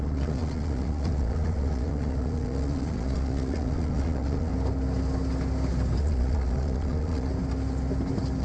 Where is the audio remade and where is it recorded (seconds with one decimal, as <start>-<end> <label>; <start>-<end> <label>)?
0.0-4.5 remade; 4.5-6.0 recorded; 6.0-7.3 remade; 7.3-8.4 recorded